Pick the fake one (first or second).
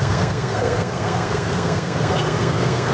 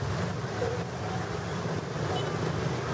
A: first